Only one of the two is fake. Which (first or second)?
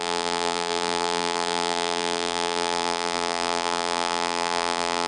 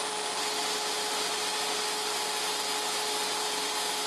first